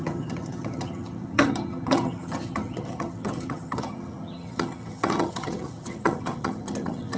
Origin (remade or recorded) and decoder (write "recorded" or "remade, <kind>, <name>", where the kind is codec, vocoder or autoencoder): remade, vocoder, HiFi-GAN